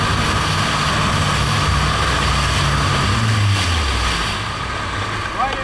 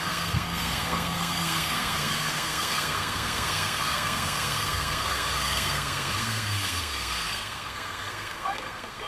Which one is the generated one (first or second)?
second